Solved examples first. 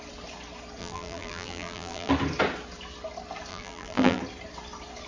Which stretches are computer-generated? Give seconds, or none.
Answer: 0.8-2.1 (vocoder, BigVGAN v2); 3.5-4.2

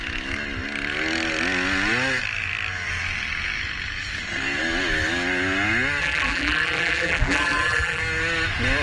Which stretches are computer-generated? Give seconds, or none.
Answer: 6.0-8.0 (vocoder, BigVGAN v2)